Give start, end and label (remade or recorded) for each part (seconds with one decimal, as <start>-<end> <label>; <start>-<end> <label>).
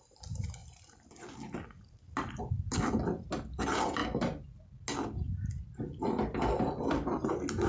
0.0-7.7 recorded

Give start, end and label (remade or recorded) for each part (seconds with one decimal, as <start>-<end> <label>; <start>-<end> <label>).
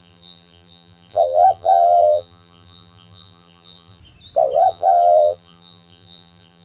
0.0-4.0 remade; 4.0-4.6 recorded; 4.6-6.6 remade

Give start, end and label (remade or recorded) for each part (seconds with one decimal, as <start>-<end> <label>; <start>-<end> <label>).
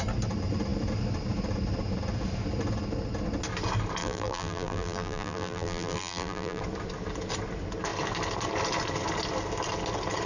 0.0-4.0 recorded; 4.0-6.6 remade; 6.6-10.3 recorded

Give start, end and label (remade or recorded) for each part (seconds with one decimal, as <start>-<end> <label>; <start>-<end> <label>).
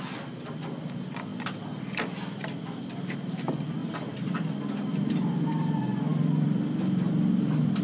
0.0-1.3 recorded; 1.3-2.6 remade; 2.6-3.8 recorded; 3.8-4.3 remade; 4.3-6.1 recorded; 6.1-7.1 remade; 7.1-7.8 recorded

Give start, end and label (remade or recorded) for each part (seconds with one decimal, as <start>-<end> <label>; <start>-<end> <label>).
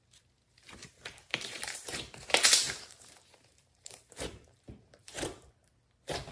0.0-0.8 recorded; 0.8-4.6 remade; 4.6-5.0 recorded; 5.0-5.5 remade; 5.5-6.3 recorded